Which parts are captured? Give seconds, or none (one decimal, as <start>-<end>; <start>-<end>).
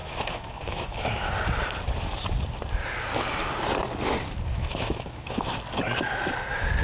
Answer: 1.3-4.5; 5.6-6.8